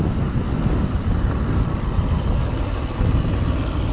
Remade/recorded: recorded